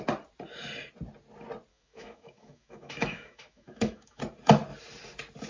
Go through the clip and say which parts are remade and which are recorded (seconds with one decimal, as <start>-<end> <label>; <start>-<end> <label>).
0.0-1.7 recorded; 1.7-4.2 remade; 4.2-5.5 recorded